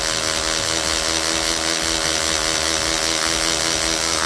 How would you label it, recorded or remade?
recorded